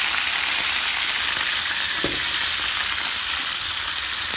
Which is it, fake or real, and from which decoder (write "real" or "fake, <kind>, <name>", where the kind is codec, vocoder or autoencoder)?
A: real